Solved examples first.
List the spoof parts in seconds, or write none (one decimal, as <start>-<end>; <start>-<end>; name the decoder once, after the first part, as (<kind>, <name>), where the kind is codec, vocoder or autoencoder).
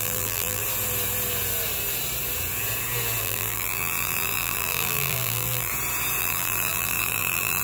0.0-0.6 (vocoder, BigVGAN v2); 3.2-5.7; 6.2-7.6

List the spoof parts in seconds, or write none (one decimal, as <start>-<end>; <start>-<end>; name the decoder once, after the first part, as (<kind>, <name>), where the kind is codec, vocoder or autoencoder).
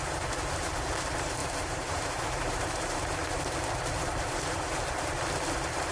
1.4-4.9 (vocoder, BigVGAN v2)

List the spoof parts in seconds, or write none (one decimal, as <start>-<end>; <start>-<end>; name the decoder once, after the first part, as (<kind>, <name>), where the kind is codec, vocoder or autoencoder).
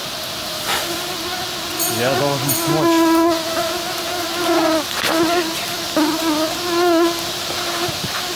none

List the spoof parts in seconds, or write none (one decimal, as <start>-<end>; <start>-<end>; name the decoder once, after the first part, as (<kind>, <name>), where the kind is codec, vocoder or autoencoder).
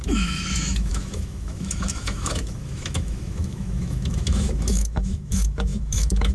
0.0-6.3 (autoencoder, DAC-VAE)